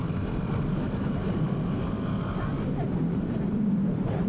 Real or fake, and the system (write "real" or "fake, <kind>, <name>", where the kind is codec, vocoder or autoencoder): real